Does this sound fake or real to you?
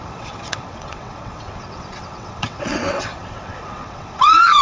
fake